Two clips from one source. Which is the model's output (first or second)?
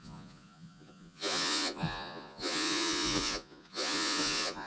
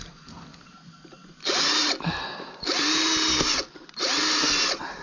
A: first